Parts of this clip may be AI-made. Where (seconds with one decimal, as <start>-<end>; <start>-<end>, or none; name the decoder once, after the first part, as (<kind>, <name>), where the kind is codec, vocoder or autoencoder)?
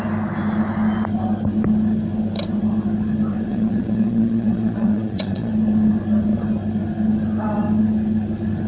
3.5-5.5 (vocoder, Vocos)